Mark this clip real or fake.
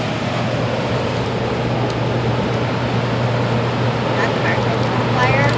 real